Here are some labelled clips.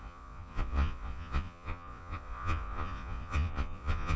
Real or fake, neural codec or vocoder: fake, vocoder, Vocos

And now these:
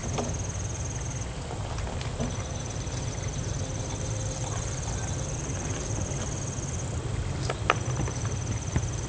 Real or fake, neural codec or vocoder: real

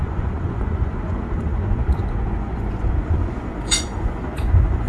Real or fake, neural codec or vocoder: fake, vocoder, Vocos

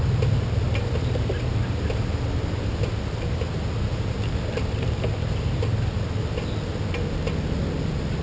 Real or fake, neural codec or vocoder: real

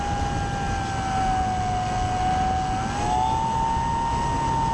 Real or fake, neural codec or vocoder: real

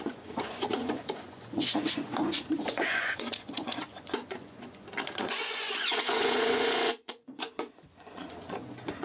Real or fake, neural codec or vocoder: fake, vocoder, Vocos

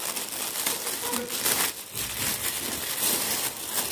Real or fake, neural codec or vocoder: real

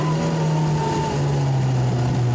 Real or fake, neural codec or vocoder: real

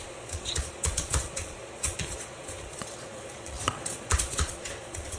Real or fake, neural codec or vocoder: fake, vocoder, Vocos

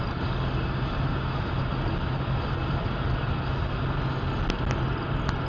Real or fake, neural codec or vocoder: real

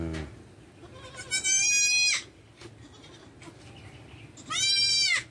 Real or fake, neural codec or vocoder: real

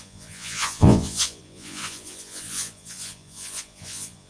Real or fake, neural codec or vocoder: fake, vocoder, Vocos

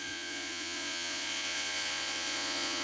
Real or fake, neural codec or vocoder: fake, vocoder, Vocos